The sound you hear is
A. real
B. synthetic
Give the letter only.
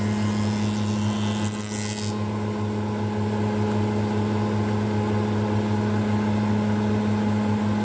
A